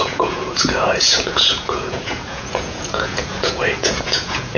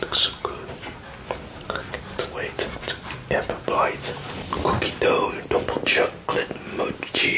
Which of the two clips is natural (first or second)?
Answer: second